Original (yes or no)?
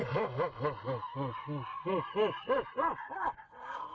yes